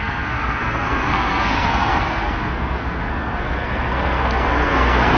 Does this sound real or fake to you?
fake